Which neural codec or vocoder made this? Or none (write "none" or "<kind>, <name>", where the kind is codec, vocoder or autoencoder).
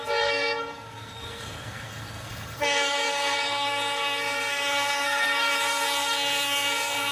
codec, SNAC